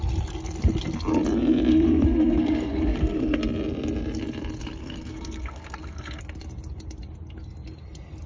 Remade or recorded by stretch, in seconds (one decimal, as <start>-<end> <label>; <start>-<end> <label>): 0.0-1.7 recorded; 1.7-3.4 remade; 3.4-4.8 recorded; 4.8-6.2 remade; 6.2-8.3 recorded